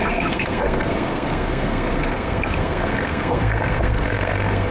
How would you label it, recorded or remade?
remade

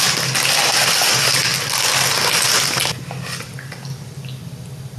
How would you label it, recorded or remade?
recorded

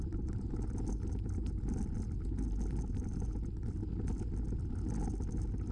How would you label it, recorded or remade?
recorded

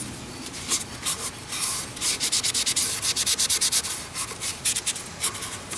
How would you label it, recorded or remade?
recorded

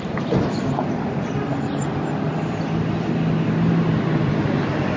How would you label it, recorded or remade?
recorded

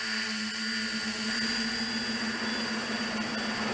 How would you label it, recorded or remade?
recorded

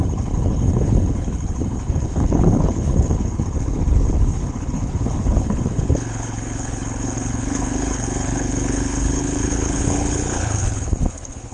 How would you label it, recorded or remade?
remade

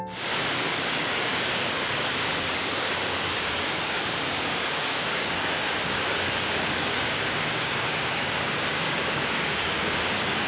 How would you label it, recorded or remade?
remade